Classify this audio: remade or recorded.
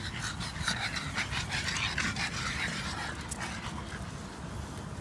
recorded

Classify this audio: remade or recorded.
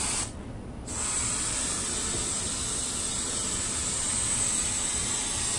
recorded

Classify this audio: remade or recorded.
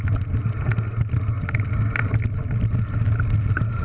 recorded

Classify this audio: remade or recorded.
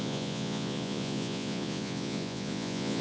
remade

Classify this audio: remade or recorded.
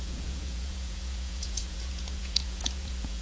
remade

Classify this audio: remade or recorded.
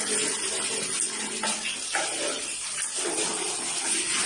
recorded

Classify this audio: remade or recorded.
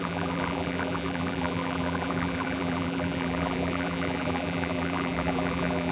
remade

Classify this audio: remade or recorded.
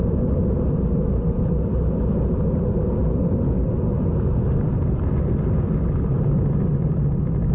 recorded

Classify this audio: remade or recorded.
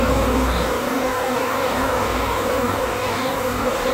remade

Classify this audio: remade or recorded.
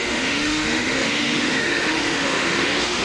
remade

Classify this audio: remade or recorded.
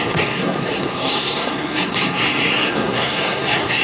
remade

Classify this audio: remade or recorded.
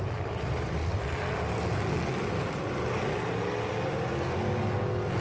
recorded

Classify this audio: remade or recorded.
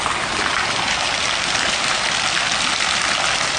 recorded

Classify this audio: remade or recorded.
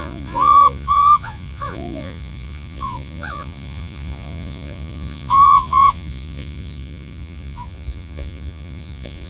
remade